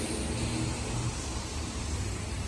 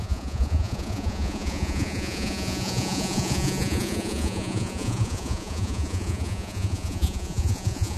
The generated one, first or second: second